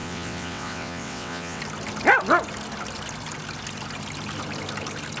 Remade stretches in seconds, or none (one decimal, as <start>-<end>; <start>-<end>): 0.0-1.6

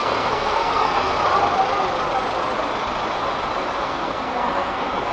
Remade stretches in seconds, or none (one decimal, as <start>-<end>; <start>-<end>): 0.0-1.1; 3.8-5.1

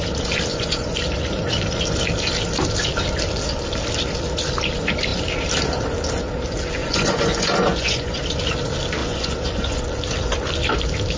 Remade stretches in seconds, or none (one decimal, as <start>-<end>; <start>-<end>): 0.5-1.0; 6.8-8.2; 9.0-9.8

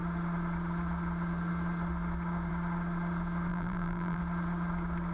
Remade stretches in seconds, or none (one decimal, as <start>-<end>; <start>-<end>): 3.5-4.2

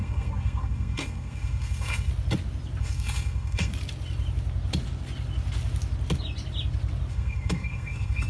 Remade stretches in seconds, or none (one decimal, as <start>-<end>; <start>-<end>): 0.0-2.1; 2.8-3.7; 7.1-8.3

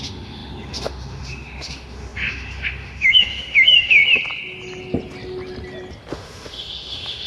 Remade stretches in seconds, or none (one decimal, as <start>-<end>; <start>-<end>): 0.0-4.0; 6.1-7.3

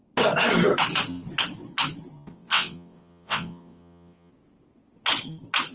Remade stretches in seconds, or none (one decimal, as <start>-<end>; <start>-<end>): 2.3-4.3